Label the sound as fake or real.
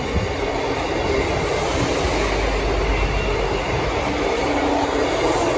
real